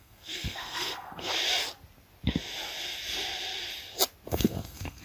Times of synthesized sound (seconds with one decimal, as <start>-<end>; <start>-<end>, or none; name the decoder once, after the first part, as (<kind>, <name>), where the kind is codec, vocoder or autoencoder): 0.0-1.3 (codec, SNAC); 4.3-5.0